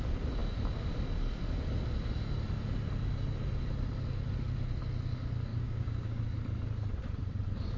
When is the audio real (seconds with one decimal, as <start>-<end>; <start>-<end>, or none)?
0.0-5.5; 6.2-7.8